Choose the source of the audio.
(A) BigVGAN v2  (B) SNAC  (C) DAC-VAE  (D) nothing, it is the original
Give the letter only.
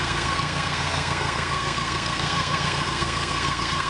B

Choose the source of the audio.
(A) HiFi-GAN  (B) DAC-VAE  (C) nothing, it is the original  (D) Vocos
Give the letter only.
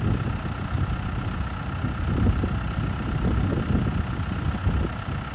C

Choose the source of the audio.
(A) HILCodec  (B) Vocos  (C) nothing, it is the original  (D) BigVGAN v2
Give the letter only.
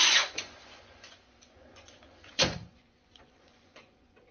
B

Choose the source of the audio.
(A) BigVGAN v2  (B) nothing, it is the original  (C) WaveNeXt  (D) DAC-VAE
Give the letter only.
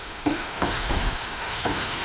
D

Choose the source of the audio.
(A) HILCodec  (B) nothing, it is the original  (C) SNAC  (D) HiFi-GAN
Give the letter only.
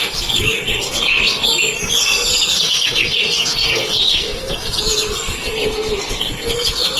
C